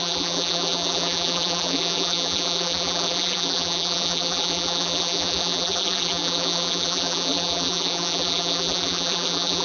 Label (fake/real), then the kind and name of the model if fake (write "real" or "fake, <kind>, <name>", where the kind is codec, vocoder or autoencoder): fake, vocoder, BigVGAN v2